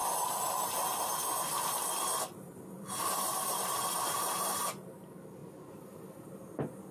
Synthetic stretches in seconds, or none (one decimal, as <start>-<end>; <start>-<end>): none